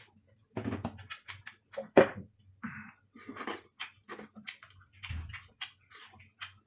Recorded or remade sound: recorded